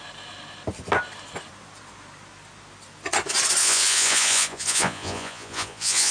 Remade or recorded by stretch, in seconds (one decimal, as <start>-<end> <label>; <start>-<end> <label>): 0.0-3.6 recorded; 3.6-6.1 remade